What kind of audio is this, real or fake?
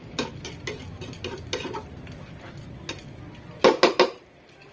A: real